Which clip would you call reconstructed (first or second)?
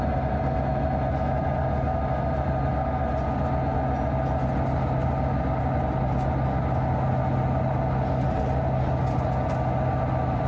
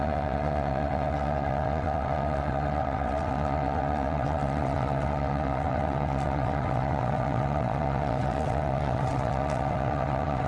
second